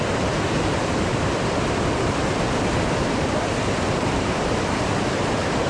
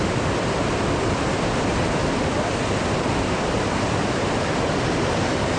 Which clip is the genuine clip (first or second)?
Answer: second